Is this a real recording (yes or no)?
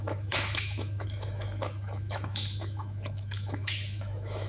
no